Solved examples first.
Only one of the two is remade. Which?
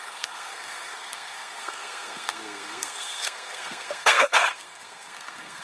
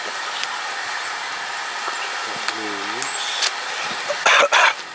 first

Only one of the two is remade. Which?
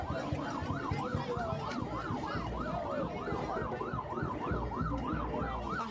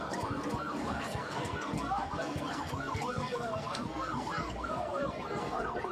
second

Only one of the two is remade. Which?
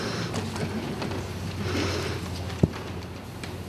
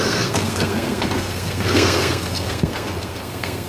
second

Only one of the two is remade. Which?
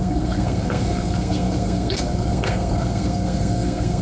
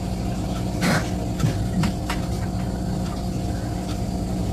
first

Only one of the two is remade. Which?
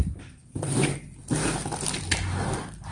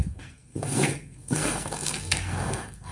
second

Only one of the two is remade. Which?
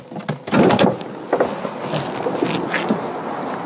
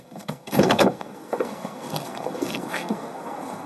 second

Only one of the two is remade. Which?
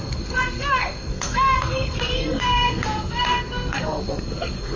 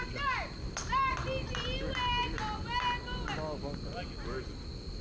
first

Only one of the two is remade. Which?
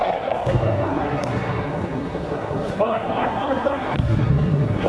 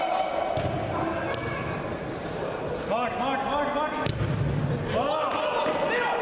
first